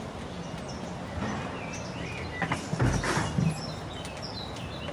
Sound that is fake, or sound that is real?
real